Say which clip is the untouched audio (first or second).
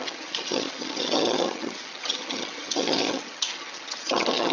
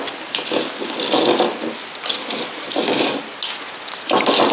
second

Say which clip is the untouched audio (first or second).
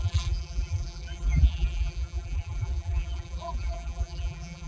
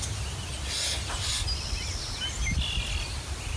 second